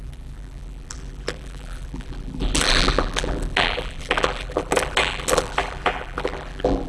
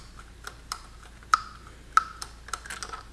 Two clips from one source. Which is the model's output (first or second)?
first